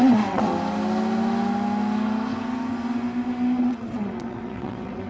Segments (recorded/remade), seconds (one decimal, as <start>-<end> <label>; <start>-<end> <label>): 0.0-0.5 remade; 0.5-3.6 recorded; 3.6-5.1 remade

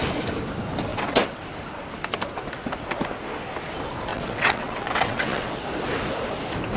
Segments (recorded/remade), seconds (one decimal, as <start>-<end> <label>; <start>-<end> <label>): 0.0-0.9 recorded; 0.9-1.4 remade; 1.4-4.1 recorded; 4.1-5.5 remade; 5.5-6.8 recorded